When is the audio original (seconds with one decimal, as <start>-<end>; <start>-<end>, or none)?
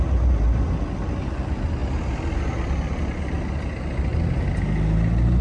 0.0-5.4